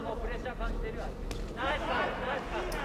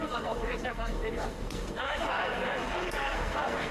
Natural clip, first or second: first